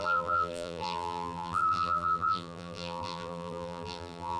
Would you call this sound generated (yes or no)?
yes